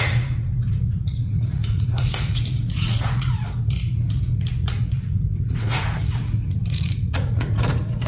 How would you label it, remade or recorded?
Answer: remade